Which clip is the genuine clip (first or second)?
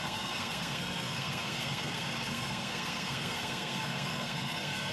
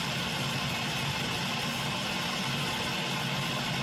second